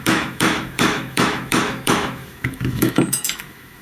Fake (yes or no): yes